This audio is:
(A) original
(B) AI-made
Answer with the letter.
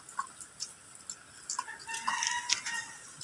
A